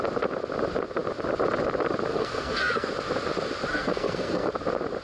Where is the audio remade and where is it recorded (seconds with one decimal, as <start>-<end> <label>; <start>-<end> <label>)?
0.0-2.1 recorded; 2.1-2.9 remade; 2.9-3.7 recorded; 3.7-4.5 remade; 4.5-5.0 recorded

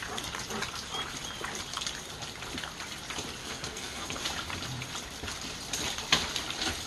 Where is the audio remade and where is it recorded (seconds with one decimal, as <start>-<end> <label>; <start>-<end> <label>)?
0.0-3.4 recorded; 3.4-4.2 remade; 4.2-6.9 recorded